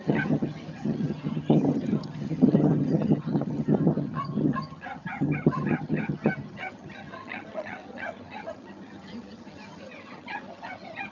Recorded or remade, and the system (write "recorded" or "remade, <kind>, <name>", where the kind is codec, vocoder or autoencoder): remade, vocoder, HiFi-GAN